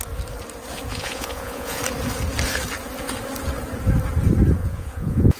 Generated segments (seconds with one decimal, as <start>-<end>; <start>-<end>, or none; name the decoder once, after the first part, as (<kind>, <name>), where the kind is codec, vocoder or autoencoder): 0.9-1.8 (vocoder, Vocos); 4.6-5.4